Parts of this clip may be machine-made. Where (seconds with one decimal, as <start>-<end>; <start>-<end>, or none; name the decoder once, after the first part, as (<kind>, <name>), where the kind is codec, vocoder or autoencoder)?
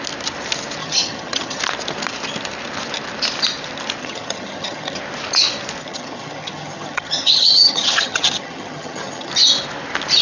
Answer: 0.8-1.6 (vocoder, HiFi-GAN); 4.0-5.0; 5.8-9.3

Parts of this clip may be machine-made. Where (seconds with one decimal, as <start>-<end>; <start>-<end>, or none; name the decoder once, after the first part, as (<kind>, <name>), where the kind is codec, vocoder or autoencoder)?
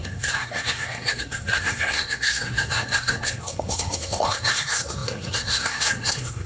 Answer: 0.0-6.5 (codec, SNAC)